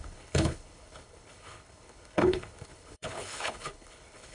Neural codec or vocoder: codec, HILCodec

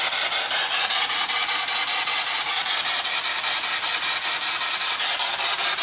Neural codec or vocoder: none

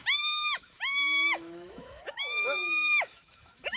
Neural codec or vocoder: autoencoder, DAC-VAE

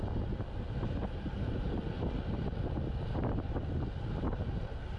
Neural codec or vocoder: none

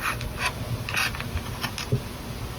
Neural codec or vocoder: none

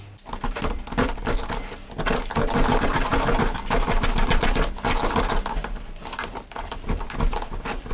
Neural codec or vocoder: none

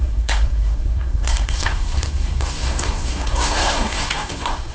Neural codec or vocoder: codec, SNAC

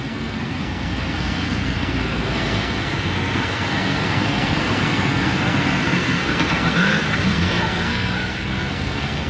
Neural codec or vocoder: codec, SNAC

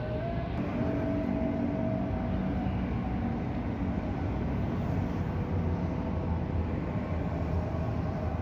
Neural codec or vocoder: none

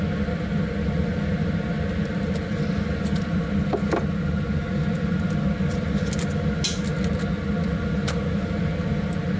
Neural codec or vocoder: none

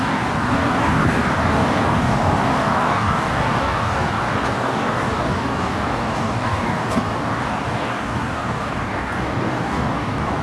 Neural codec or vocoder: codec, DAC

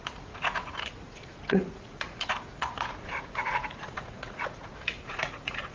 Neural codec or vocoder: vocoder, Vocos